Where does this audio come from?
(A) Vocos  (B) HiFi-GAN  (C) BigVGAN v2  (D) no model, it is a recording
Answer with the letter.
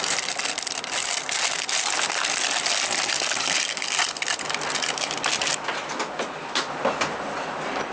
D